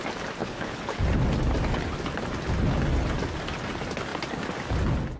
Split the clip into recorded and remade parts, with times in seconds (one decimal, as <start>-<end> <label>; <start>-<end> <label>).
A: 0.0-0.4 recorded; 0.4-1.0 remade; 1.0-5.2 recorded